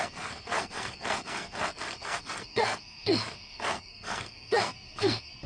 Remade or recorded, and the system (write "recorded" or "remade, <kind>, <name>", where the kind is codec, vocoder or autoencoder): remade, codec, SNAC